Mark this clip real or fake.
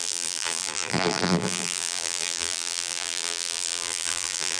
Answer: fake